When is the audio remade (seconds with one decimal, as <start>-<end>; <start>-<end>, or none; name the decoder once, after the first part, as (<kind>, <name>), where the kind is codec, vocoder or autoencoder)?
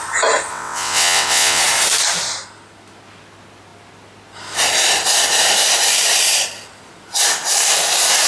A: 0.5-1.6 (vocoder, WaveNeXt)